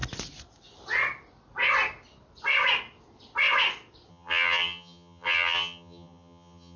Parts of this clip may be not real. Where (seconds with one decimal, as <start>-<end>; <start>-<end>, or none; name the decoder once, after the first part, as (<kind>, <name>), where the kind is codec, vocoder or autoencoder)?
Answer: 4.1-6.8 (vocoder, HiFi-GAN)